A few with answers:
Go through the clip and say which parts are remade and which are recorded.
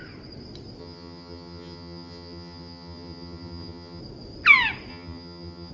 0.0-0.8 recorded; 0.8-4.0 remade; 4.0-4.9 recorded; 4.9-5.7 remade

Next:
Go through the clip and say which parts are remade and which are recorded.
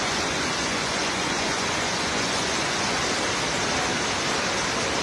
0.0-3.0 remade; 3.0-5.0 recorded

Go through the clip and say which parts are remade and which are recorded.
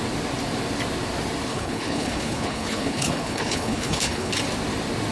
0.0-1.5 recorded; 1.5-4.3 remade; 4.3-5.1 recorded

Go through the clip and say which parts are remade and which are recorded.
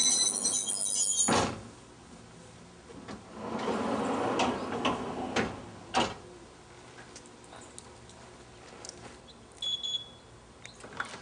0.0-11.2 recorded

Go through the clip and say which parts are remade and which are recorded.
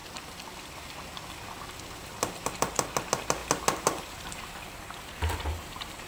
0.0-6.1 recorded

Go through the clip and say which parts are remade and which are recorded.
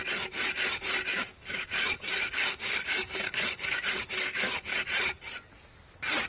0.0-1.1 recorded; 1.1-4.7 remade; 4.7-6.3 recorded